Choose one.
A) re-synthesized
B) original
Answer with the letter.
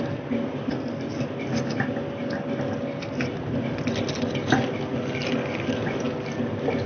B